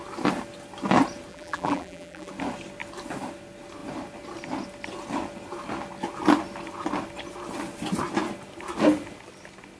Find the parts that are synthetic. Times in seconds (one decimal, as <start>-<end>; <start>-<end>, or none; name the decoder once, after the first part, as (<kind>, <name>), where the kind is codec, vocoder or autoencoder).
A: 1.3-2.3 (vocoder, BigVGAN v2)